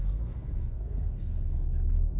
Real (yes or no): no